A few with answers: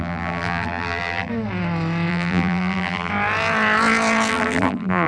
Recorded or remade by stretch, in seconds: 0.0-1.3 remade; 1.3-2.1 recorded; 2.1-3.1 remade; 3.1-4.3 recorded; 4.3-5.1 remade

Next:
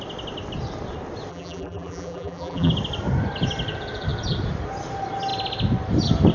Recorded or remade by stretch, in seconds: 0.0-1.3 recorded; 1.3-2.7 remade; 2.7-6.3 recorded

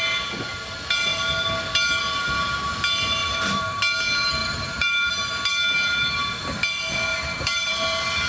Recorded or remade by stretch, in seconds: 0.0-3.2 recorded; 3.2-3.8 remade; 3.8-4.4 recorded; 4.4-5.1 remade; 5.1-7.1 recorded; 7.1-7.7 remade; 7.7-8.3 recorded

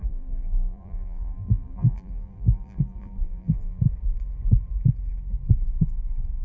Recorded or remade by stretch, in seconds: 0.0-3.8 remade; 3.8-6.4 recorded

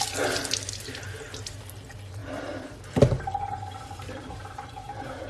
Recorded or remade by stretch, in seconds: 0.0-2.2 recorded; 2.2-5.3 remade

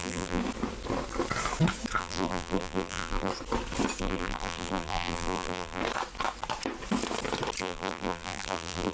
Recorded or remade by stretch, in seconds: 0.0-0.4 remade; 0.4-2.0 recorded; 2.0-3.3 remade; 3.3-4.0 recorded; 4.0-5.8 remade; 5.8-7.6 recorded; 7.6-8.9 remade

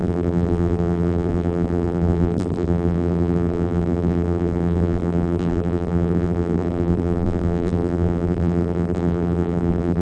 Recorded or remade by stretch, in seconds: 0.0-10.0 remade

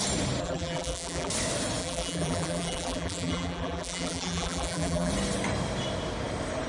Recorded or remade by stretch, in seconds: 0.0-0.4 recorded; 0.4-1.3 remade; 1.3-1.8 recorded; 1.8-5.1 remade; 5.1-6.7 recorded